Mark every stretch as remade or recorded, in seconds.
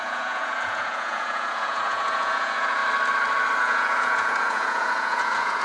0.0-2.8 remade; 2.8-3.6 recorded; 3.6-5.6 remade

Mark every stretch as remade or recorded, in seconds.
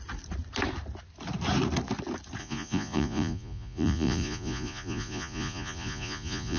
0.0-2.4 recorded; 2.4-6.6 remade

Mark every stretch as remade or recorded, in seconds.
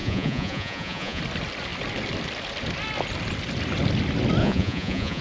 0.0-1.2 remade; 1.2-4.4 recorded; 4.4-5.2 remade